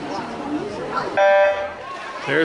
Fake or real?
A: real